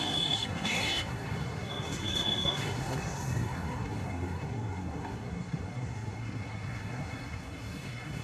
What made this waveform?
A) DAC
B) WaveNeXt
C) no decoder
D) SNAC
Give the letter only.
D